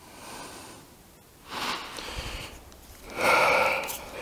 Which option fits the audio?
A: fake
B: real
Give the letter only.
B